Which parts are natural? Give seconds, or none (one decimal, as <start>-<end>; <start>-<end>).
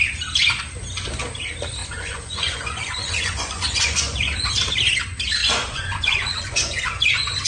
0.0-1.8; 4.5-5.4; 7.1-7.5